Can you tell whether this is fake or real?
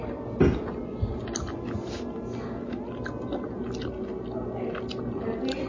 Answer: real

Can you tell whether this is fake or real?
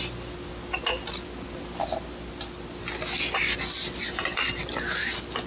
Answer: real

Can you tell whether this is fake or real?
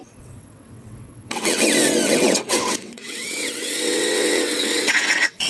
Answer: fake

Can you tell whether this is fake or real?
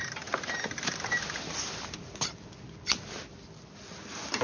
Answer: real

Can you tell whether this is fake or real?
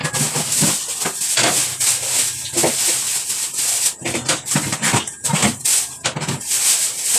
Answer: real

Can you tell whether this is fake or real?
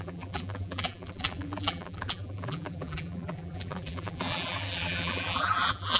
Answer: fake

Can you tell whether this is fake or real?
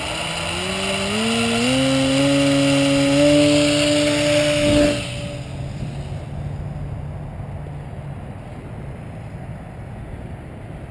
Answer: real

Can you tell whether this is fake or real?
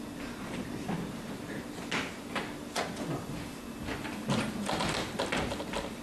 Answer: real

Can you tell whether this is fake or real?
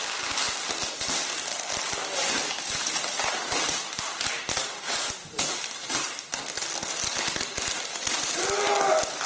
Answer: real